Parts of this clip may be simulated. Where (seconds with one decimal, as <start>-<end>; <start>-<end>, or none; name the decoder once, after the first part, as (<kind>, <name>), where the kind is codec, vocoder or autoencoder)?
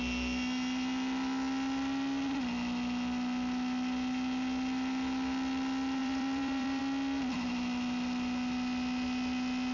6.0-6.8 (vocoder, BigVGAN v2)